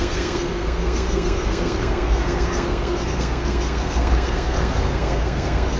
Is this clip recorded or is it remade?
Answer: remade